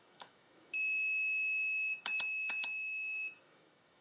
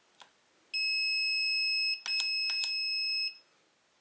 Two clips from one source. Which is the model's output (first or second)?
first